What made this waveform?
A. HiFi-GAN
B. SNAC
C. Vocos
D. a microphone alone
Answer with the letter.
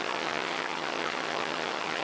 A